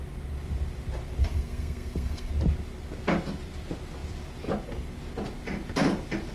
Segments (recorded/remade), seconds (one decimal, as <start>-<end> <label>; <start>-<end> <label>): 0.0-1.2 recorded; 1.2-2.3 remade; 2.3-6.3 recorded